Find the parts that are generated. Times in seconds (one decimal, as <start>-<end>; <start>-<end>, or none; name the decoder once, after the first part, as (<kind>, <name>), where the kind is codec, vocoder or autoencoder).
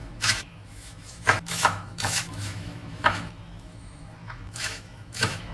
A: 0.0-5.5 (autoencoder, DAC-VAE)